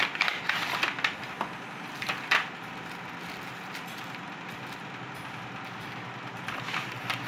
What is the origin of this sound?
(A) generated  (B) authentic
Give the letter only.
B